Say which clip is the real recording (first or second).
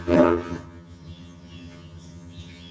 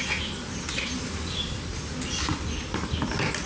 second